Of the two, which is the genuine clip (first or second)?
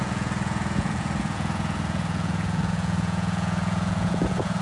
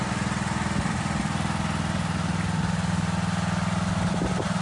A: second